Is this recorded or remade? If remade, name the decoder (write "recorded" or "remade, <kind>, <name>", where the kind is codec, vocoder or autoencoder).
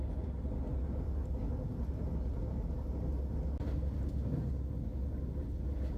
recorded